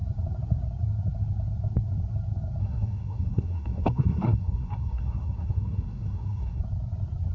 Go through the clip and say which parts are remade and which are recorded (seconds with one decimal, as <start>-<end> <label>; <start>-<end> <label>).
0.0-2.6 recorded; 2.6-6.6 remade; 6.6-7.3 recorded